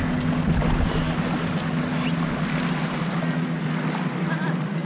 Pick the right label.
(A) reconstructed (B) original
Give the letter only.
B